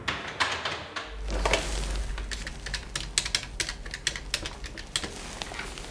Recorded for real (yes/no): yes